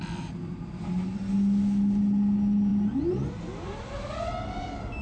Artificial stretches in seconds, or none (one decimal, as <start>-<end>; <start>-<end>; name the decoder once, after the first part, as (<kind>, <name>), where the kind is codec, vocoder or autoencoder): none